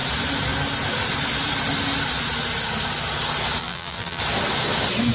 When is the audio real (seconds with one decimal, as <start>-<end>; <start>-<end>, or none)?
0.0-3.6; 4.2-5.1